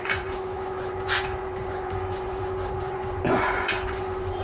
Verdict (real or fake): fake